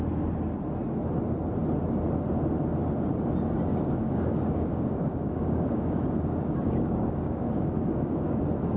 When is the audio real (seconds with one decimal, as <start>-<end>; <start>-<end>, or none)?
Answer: 0.0-3.7; 8.4-8.8